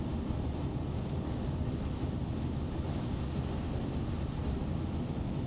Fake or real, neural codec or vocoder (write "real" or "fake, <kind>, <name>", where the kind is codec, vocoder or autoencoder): real